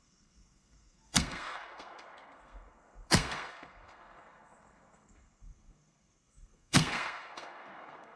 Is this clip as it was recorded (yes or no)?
no